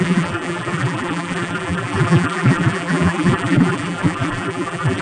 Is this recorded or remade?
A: remade